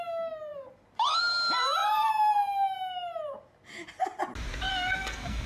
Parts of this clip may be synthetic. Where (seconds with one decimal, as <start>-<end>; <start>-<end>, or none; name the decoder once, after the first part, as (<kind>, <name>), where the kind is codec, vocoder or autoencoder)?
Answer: 4.7-5.5 (codec, SNAC)